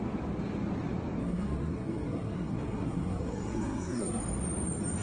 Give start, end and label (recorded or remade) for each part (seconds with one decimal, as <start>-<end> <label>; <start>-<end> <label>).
0.0-1.2 recorded; 1.2-4.2 remade; 4.2-5.0 recorded